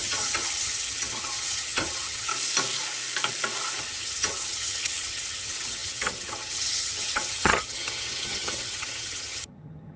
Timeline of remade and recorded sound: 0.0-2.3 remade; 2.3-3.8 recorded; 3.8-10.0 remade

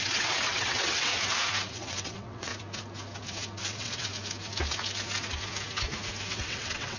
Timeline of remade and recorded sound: 0.0-1.1 remade; 1.1-1.7 recorded; 1.7-2.5 remade; 2.5-3.6 recorded; 3.6-4.1 remade; 4.1-6.3 recorded; 6.3-7.0 remade

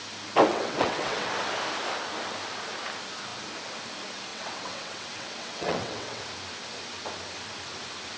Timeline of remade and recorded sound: 0.0-0.5 recorded; 0.5-1.3 remade; 1.3-4.3 recorded; 4.3-6.2 remade; 6.2-8.2 recorded